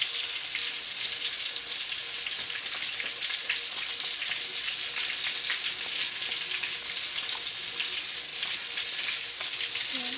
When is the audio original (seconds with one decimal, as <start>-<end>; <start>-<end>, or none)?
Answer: 0.0-2.0; 5.0-8.3; 9.2-10.2